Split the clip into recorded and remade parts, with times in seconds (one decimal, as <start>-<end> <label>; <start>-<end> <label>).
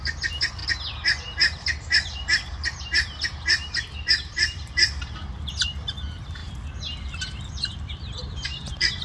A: 0.0-0.6 remade; 0.6-4.3 recorded; 4.3-6.4 remade; 6.4-7.4 recorded; 7.4-9.0 remade